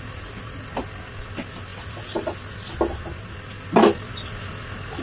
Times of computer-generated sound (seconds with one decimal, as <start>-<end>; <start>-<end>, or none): none